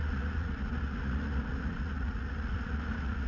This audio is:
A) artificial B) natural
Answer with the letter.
A